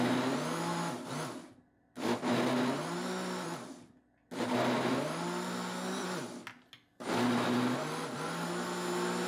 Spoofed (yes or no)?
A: no